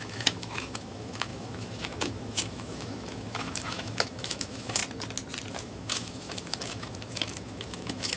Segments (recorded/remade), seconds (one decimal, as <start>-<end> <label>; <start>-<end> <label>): 0.0-4.8 remade; 4.8-5.5 recorded; 5.5-8.2 remade